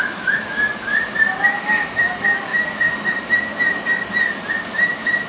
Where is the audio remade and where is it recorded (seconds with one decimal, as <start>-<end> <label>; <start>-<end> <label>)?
0.0-0.9 remade; 0.9-1.5 recorded; 1.5-3.5 remade; 3.5-4.7 recorded; 4.7-5.3 remade